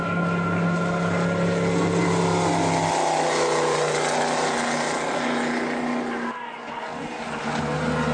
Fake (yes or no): no